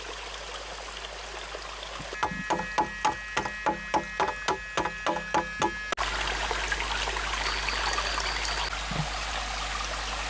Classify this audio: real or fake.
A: real